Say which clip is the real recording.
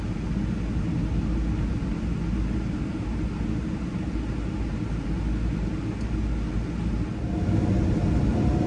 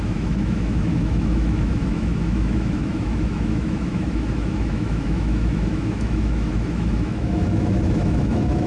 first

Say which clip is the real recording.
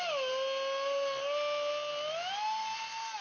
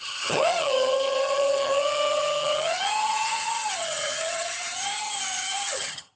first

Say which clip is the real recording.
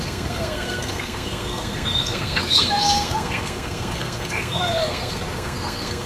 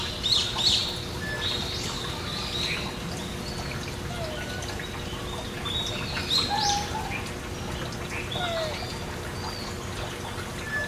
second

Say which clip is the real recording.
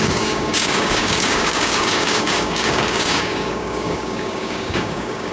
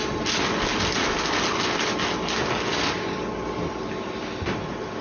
second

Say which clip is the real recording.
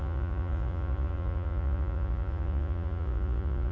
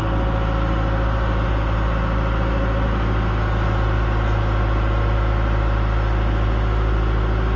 second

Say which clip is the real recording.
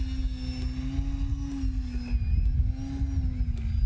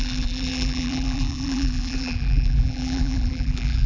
first